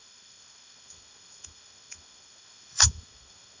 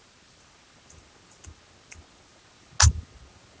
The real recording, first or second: second